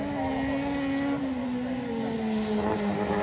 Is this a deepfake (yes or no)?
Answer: no